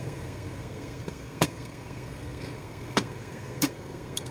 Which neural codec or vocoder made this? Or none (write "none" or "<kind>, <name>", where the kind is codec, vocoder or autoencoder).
codec, SNAC